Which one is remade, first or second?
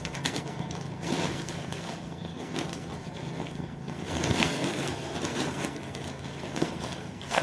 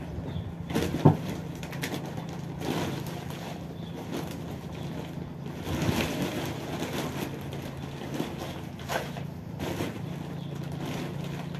first